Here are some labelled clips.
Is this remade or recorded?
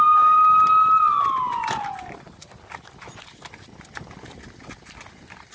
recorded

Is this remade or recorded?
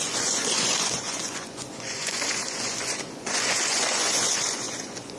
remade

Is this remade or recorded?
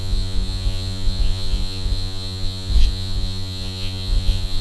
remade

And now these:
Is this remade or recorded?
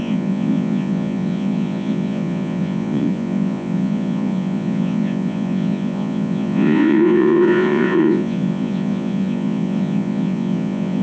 remade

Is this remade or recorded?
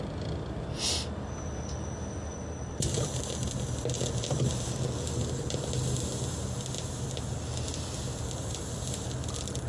recorded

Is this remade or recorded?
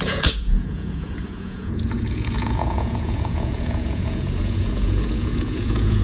remade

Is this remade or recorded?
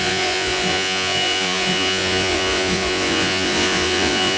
remade